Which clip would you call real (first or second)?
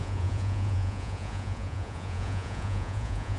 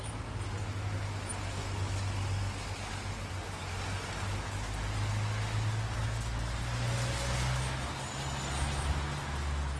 second